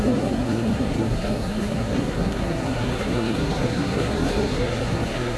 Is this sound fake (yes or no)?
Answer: yes